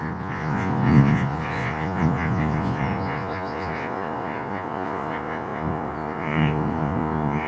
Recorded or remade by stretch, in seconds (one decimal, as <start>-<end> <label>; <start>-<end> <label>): 0.0-7.5 remade